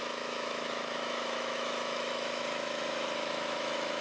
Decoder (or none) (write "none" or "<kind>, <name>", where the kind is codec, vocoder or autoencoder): autoencoder, DAC-VAE